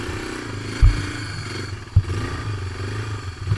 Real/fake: real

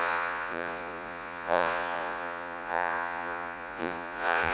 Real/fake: fake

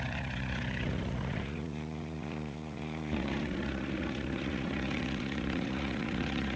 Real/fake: fake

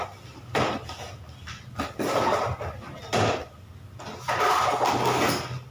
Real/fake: real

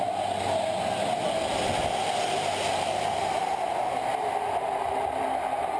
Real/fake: real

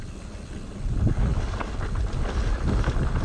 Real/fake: real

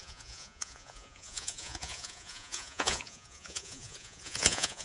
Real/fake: fake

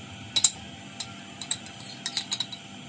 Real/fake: real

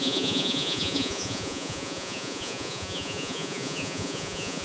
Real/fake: fake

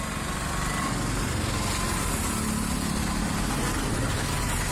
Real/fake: real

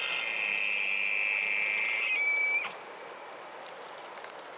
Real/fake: real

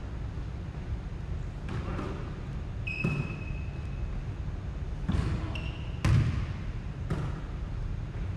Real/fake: real